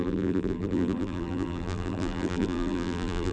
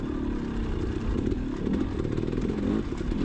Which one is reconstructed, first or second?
first